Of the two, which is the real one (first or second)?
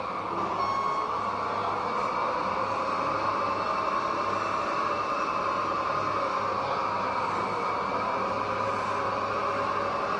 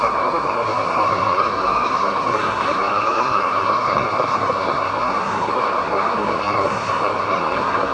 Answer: first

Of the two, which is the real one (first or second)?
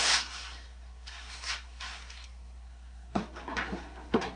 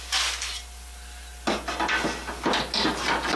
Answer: second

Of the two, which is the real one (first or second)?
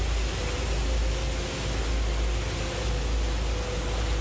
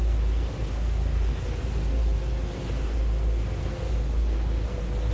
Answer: first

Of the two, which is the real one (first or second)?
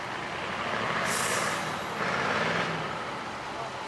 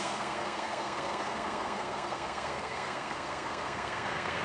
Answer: first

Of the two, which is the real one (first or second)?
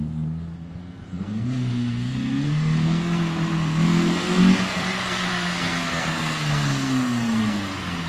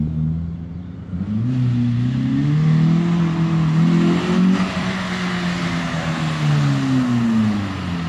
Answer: second